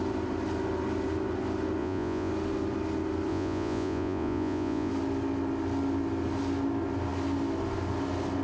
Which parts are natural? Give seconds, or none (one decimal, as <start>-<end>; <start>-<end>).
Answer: 0.0-1.8; 2.3-3.3; 4.9-8.4